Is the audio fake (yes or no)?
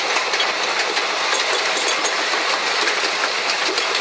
no